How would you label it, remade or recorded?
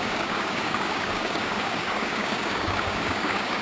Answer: remade